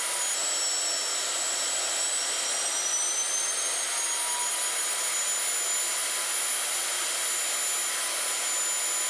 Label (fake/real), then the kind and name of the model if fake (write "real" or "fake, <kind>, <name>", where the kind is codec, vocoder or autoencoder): real